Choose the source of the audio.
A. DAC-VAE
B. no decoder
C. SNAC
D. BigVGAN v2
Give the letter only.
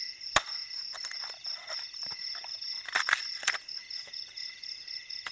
B